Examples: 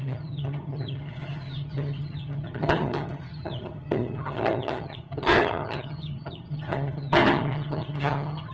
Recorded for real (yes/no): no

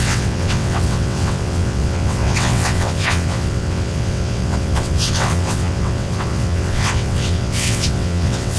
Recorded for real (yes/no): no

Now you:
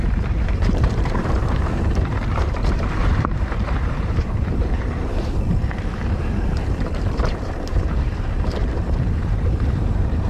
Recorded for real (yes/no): no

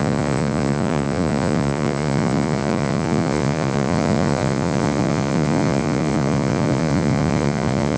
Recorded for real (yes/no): no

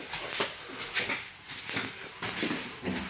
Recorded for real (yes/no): yes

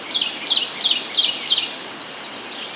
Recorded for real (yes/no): yes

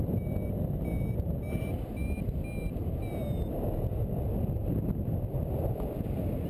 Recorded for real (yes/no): yes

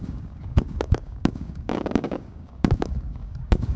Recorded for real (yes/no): no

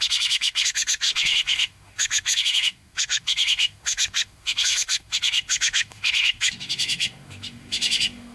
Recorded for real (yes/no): no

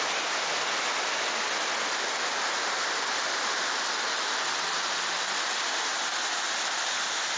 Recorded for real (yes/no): yes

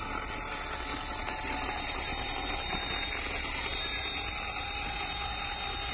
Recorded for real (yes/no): yes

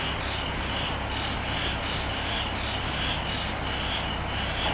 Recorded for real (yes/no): yes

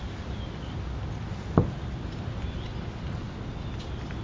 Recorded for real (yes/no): yes